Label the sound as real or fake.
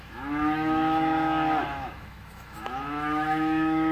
fake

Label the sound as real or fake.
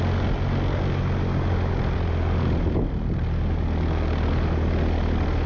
real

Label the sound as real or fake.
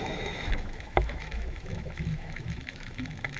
fake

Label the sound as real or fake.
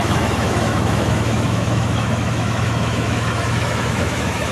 fake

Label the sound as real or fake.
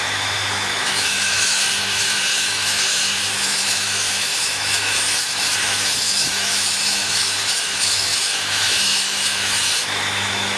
fake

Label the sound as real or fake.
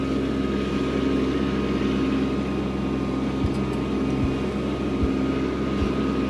real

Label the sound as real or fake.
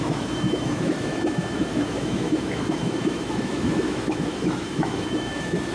fake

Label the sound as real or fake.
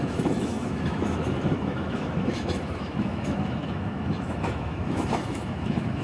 fake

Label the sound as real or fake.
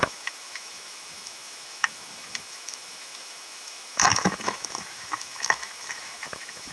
fake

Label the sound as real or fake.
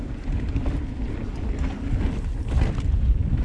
real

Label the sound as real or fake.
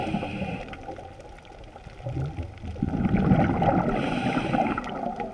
real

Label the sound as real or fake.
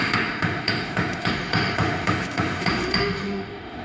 fake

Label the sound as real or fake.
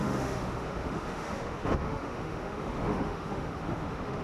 fake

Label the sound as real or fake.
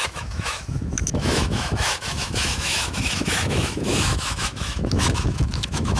fake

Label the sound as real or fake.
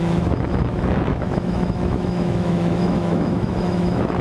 fake